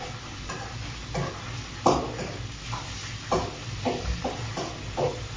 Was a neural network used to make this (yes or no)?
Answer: no